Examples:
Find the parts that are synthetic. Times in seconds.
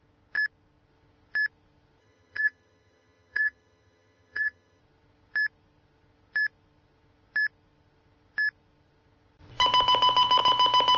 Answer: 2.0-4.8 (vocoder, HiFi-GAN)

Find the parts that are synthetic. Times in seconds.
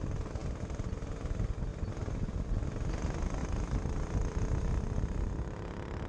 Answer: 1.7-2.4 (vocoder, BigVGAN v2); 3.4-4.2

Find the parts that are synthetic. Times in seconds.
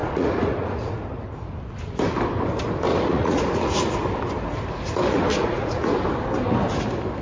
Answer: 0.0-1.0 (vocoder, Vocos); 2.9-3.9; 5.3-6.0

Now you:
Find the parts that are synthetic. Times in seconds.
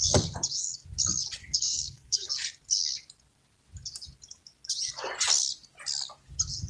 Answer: 1.4-2.3 (codec, SNAC)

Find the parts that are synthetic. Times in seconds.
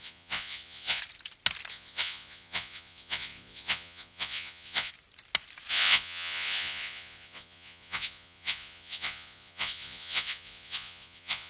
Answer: 0.0-1.0 (vocoder, Vocos); 1.7-4.9; 5.7-11.5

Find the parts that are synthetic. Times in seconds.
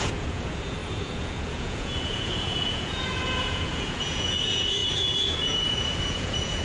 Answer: 0.0-6.6 (vocoder, Vocos)